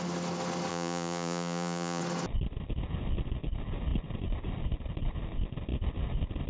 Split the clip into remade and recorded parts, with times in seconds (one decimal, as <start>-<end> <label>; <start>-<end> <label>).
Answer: 0.0-0.7 recorded; 0.7-2.0 remade; 2.0-6.5 recorded

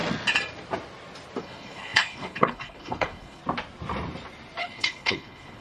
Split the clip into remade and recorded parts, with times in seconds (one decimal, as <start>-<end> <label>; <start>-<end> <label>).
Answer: 0.0-1.4 recorded; 1.4-3.4 remade; 3.4-4.6 recorded; 4.6-5.6 remade